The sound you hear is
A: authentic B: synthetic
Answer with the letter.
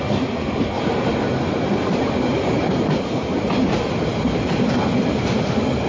A